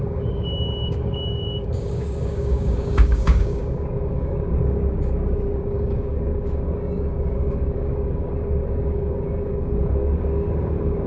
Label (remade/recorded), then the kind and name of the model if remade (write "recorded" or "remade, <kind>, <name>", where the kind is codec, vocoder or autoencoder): remade, codec, DAC